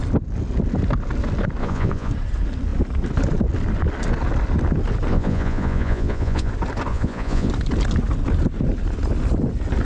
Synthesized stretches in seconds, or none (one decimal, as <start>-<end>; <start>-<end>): 1.6-2.1; 5.1-6.5; 6.9-7.5